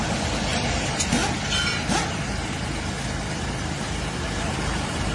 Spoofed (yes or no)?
no